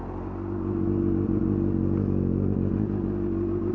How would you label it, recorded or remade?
recorded